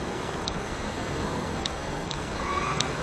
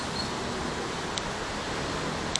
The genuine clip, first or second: second